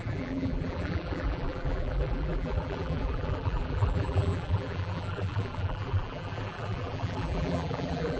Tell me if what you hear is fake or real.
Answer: fake